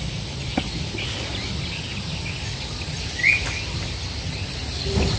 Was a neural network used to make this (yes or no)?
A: no